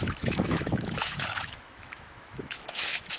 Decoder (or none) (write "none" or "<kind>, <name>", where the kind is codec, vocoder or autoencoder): autoencoder, DAC-VAE